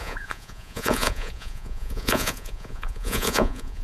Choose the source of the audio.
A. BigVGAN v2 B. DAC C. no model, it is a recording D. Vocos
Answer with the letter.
D